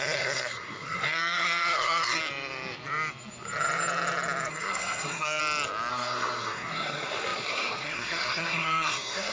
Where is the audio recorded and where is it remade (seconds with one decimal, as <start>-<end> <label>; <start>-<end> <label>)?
0.0-2.2 remade; 2.2-4.5 recorded; 4.5-5.4 remade; 5.4-5.9 recorded; 5.9-9.3 remade